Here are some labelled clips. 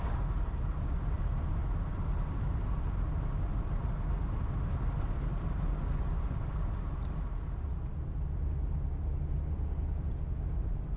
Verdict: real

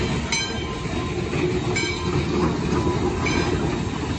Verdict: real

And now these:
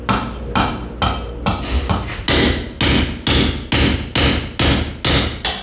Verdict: real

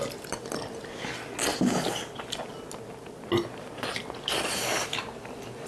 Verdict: real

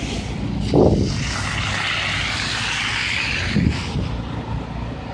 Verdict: real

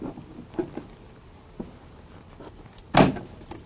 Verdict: real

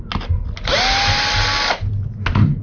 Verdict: real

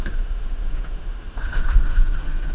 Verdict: fake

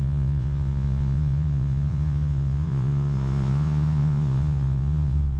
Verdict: fake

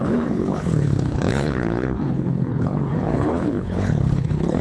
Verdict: fake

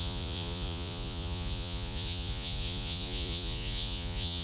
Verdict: fake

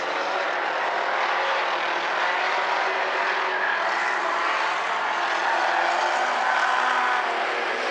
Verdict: real